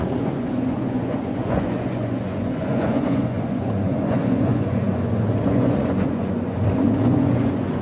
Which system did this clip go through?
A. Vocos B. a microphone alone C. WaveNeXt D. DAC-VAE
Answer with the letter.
A